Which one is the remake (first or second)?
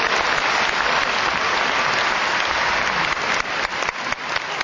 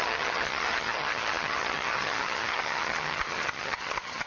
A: second